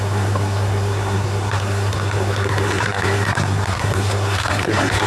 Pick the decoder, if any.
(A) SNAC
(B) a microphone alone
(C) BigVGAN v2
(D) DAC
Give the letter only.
A